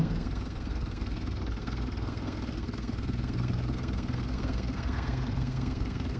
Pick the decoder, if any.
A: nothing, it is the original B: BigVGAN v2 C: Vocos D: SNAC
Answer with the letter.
D